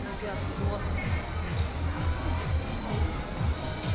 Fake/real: real